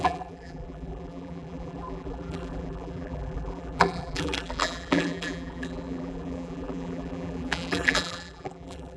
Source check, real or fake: fake